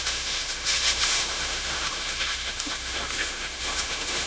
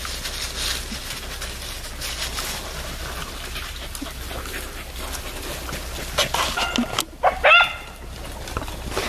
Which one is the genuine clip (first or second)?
second